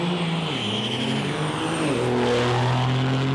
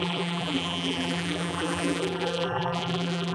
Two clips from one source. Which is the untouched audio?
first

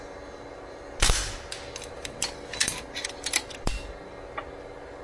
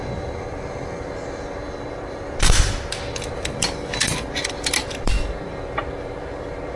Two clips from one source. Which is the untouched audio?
first